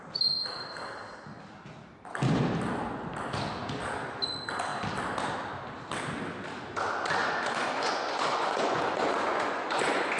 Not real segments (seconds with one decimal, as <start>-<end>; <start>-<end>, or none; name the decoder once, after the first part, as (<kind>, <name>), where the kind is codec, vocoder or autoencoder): 7.2-10.2 (vocoder, Vocos)